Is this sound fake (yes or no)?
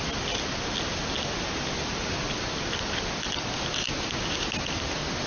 no